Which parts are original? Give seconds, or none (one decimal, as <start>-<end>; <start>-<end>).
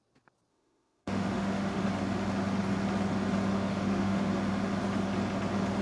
0.0-0.5; 1.8-3.5; 4.3-5.8